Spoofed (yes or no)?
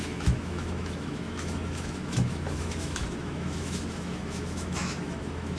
yes